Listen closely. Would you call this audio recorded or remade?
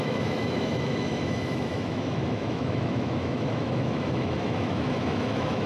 remade